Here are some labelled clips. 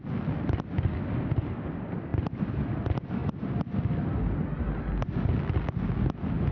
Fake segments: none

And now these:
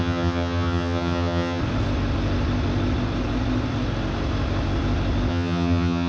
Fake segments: 0.0-1.6 (vocoder, HiFi-GAN); 5.3-6.1

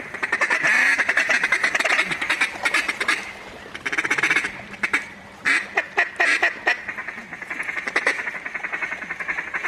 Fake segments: 7.0-7.7 (vocoder, Vocos)

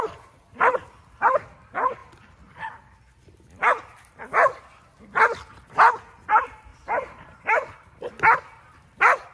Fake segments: 6.7-8.0 (vocoder, BigVGAN v2)